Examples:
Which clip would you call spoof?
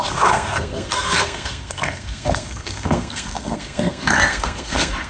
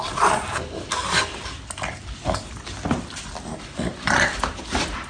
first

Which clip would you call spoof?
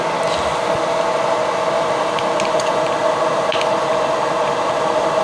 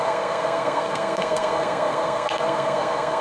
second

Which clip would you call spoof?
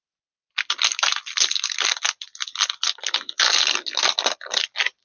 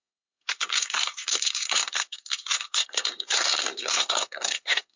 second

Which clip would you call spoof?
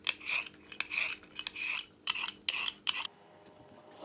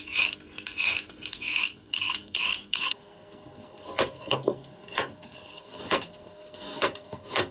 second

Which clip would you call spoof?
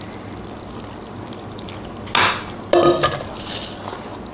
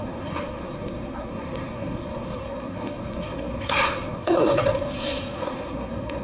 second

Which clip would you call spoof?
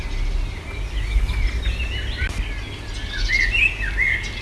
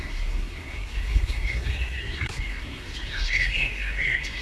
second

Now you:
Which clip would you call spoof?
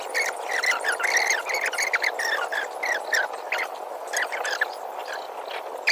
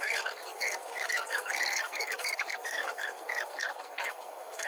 second